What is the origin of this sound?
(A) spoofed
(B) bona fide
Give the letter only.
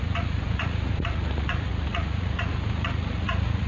A